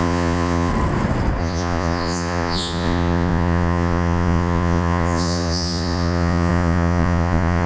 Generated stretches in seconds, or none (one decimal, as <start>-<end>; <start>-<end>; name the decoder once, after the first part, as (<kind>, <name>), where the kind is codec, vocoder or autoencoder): 0.0-0.7 (vocoder, Vocos); 1.4-7.7

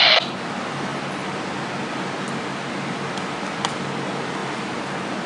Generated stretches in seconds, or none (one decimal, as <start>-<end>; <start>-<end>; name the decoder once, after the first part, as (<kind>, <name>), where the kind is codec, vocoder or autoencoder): none

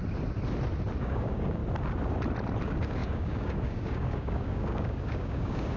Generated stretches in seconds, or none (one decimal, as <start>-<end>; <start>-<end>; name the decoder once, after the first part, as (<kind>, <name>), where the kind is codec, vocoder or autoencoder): 1.0-1.6 (codec, DAC); 2.6-5.8

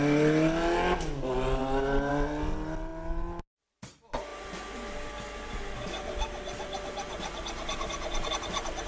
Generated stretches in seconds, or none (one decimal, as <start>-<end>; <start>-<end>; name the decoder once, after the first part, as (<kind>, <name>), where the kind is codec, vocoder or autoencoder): none

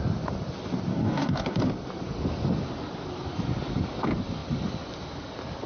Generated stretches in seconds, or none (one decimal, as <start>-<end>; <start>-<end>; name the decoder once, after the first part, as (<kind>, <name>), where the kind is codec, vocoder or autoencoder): 0.9-1.6 (codec, DAC)

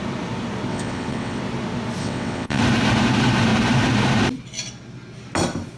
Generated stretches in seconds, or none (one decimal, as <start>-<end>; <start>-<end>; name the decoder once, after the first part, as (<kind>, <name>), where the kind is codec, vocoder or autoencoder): 0.7-1.4 (vocoder, WaveNeXt); 2.0-2.6

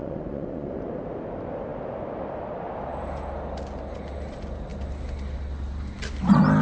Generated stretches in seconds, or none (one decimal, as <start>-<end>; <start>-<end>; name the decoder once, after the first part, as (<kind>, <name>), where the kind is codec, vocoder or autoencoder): 0.0-0.9 (vocoder, Vocos)